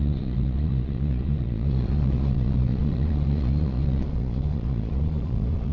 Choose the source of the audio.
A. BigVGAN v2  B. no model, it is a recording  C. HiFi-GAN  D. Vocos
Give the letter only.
D